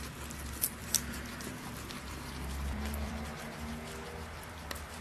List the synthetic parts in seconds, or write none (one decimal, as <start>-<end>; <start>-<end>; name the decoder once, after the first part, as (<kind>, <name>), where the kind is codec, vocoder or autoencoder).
0.8-3.7 (vocoder, BigVGAN v2)